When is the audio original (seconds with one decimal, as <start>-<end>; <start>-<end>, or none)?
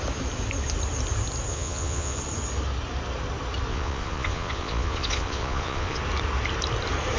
0.0-1.5; 2.2-3.7; 6.0-7.2